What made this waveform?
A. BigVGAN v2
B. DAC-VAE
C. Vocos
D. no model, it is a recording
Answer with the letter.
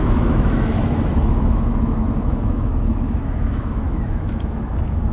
B